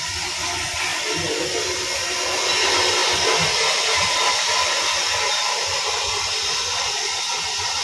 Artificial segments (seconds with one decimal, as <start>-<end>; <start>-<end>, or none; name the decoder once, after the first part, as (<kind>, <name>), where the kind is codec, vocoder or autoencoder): 0.9-1.4 (vocoder, BigVGAN v2); 3.0-7.3